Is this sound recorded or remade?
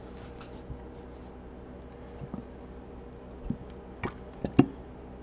recorded